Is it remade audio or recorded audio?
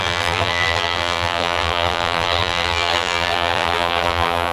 remade